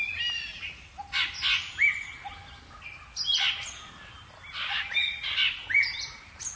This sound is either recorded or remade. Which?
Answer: recorded